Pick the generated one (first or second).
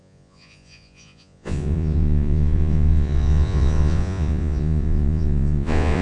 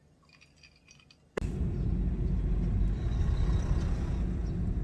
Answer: first